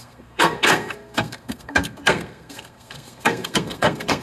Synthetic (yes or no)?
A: yes